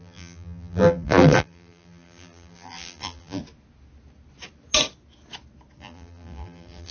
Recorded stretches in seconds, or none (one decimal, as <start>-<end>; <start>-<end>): 3.4-5.8